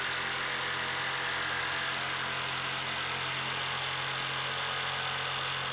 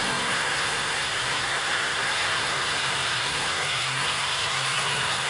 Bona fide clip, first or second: first